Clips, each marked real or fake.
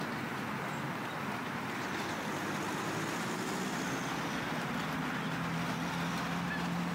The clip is real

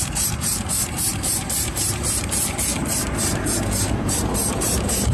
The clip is fake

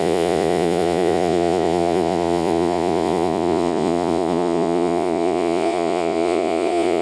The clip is fake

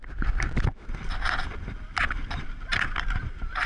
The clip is real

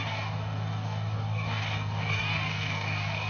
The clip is fake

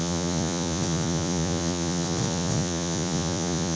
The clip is fake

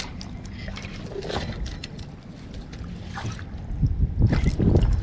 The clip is real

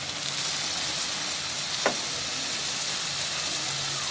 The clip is real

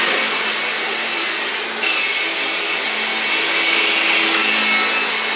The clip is real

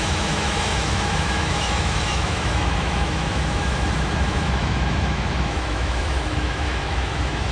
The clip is fake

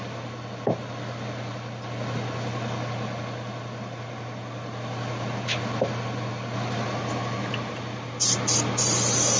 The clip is real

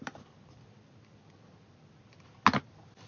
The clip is real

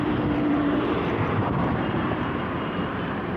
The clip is fake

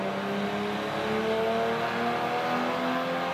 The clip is real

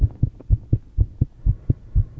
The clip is real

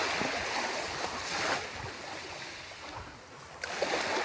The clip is real